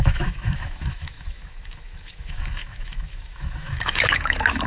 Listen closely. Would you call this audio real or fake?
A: fake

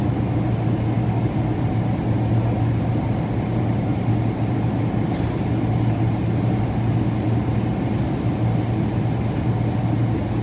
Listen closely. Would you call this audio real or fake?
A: real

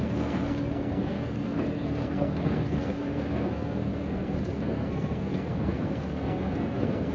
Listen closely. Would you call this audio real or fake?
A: fake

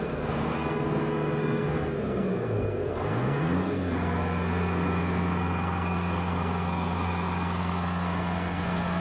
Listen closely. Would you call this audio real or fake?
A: fake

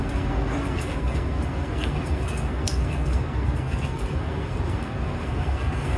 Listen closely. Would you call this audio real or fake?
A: fake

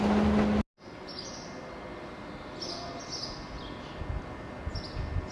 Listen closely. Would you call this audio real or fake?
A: real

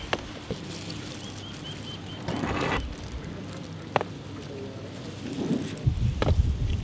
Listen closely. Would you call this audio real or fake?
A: real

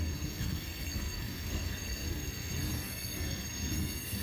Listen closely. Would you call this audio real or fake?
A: fake